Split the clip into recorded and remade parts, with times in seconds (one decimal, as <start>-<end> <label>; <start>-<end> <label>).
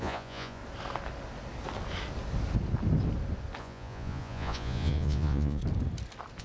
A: 0.0-0.6 remade; 0.6-3.6 recorded; 3.6-5.6 remade; 5.6-6.4 recorded